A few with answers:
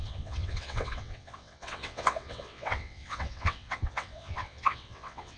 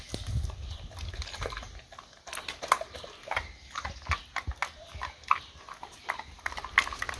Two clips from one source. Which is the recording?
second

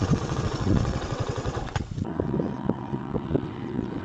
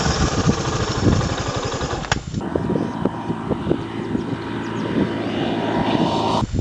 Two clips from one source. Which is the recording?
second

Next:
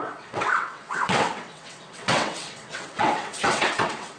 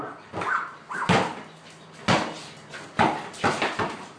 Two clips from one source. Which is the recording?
second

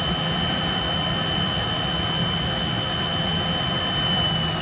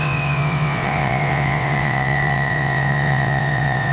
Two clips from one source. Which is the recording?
first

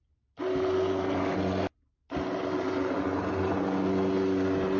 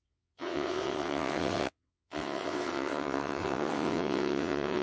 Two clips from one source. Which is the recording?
first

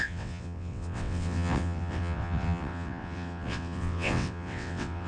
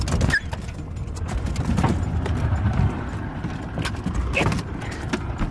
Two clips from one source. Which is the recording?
second